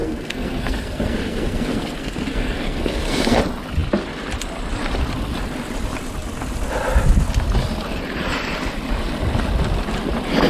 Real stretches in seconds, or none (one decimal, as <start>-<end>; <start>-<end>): 3.4-10.5